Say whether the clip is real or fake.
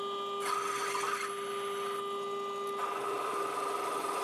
real